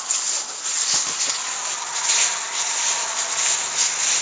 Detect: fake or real real